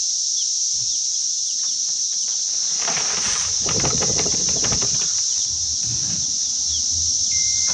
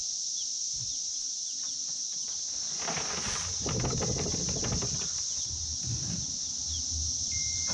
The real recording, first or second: second